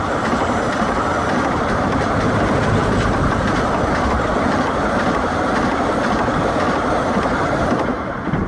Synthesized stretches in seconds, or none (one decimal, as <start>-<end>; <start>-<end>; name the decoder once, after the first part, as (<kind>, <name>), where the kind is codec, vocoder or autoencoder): none